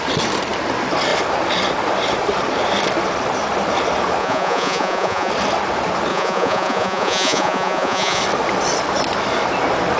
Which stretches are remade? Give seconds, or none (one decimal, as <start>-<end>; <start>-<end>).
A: 4.2-5.3; 6.1-8.2